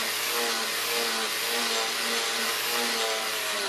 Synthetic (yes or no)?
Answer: no